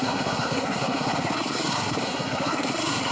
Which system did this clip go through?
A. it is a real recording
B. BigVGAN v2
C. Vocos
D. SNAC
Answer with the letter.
D